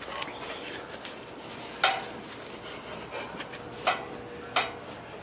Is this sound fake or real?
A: real